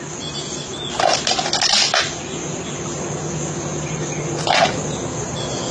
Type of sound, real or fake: real